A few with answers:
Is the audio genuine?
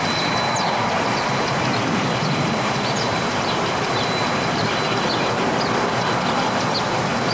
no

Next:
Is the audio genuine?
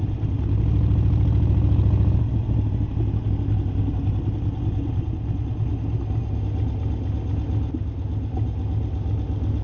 yes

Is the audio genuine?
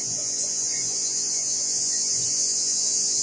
no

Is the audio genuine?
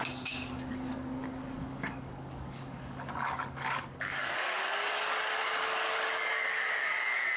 no